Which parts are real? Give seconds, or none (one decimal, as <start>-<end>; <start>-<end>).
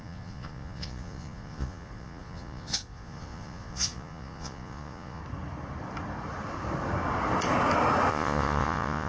5.2-8.1